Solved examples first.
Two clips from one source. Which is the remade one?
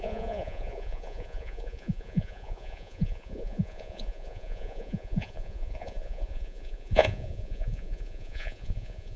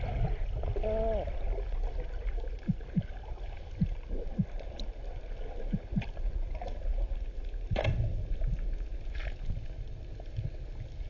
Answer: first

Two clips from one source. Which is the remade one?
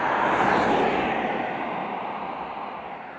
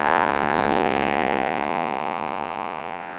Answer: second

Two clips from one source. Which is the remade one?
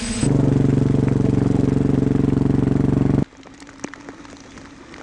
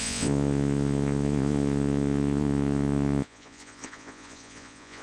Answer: second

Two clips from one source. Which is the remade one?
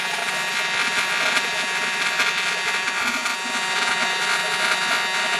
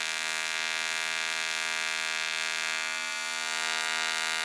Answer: first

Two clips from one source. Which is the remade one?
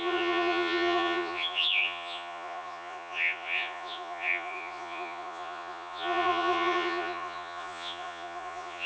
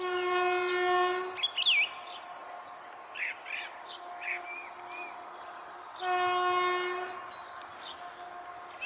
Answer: first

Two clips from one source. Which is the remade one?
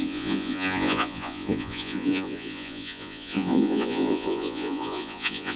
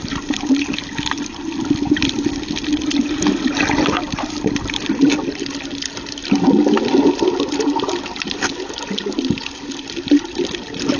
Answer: first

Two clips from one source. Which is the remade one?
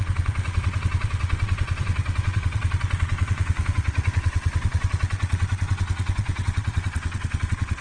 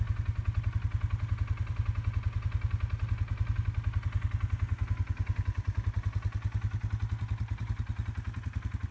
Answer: first